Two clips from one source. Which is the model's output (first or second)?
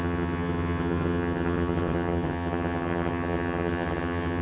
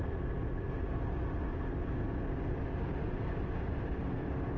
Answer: first